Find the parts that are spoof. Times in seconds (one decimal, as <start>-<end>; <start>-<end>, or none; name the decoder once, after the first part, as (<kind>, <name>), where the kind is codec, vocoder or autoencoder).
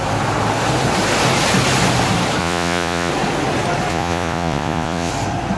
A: 2.4-3.1 (vocoder, Vocos); 3.9-5.1